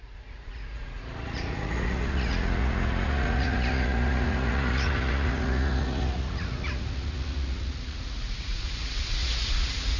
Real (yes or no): no